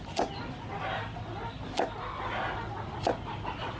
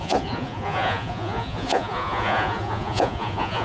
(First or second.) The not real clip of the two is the second